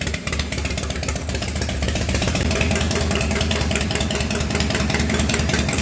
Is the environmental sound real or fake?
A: fake